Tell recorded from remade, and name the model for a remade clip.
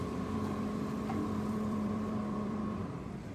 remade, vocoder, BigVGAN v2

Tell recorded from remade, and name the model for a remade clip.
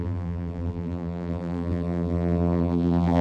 remade, vocoder, BigVGAN v2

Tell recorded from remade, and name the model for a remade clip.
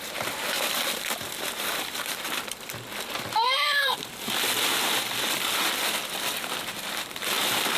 remade, vocoder, BigVGAN v2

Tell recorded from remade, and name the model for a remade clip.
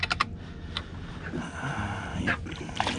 recorded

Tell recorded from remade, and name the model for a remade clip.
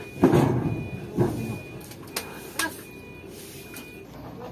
recorded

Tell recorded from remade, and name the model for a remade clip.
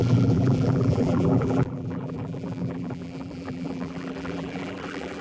remade, vocoder, BigVGAN v2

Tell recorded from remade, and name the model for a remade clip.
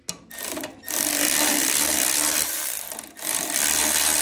recorded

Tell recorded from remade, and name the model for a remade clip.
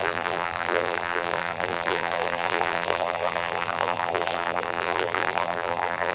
remade, vocoder, BigVGAN v2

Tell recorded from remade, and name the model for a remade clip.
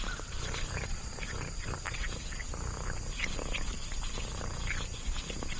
recorded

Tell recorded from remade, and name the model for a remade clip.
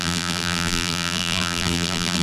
remade, vocoder, BigVGAN v2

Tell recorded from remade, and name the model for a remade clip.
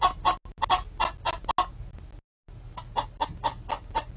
recorded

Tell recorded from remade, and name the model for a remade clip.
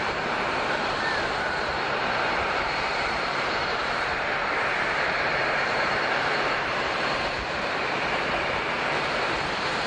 remade, vocoder, BigVGAN v2